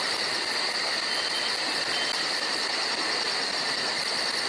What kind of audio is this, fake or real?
real